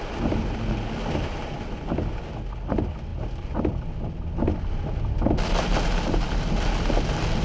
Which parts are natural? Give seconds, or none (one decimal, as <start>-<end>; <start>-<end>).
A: 0.0-7.4